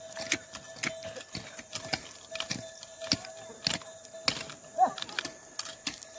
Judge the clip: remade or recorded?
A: recorded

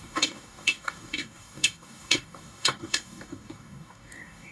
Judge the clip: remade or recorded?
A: remade